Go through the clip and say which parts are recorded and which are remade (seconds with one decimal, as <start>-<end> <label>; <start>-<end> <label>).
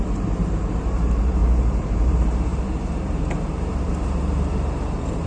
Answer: 0.0-5.3 remade